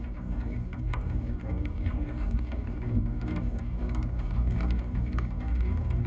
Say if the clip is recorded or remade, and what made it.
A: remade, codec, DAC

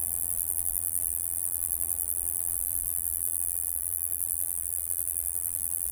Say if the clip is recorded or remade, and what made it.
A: remade, vocoder, BigVGAN v2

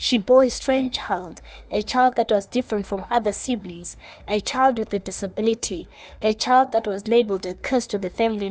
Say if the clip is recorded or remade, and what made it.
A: remade, codec, SNAC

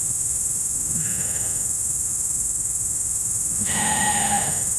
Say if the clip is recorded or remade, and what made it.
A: remade, autoencoder, DAC-VAE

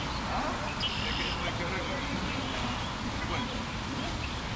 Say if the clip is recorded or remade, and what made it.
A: recorded